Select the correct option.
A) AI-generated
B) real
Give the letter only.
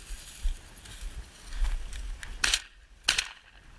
B